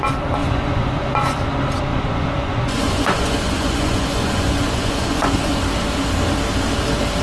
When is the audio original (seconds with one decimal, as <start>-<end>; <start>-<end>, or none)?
0.0-0.4; 1.5-1.9; 5.6-7.2